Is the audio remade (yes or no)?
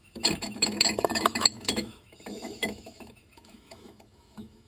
yes